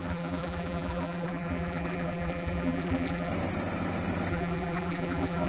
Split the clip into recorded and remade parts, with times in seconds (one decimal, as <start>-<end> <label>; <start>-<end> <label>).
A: 0.0-3.3 remade; 3.3-4.3 recorded; 4.3-5.5 remade